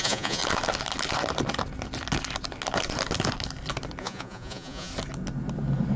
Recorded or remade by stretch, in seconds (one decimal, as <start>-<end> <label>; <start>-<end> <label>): 0.0-0.4 remade; 0.4-4.0 recorded; 4.0-4.9 remade; 4.9-6.0 recorded